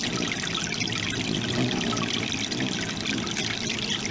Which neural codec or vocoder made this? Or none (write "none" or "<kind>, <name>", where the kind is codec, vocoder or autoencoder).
none